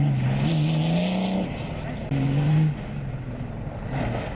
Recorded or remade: recorded